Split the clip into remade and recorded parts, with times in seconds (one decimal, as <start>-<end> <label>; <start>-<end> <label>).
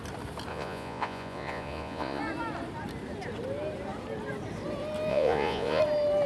0.0-0.5 recorded; 0.5-2.2 remade; 2.2-5.1 recorded; 5.1-5.8 remade; 5.8-6.3 recorded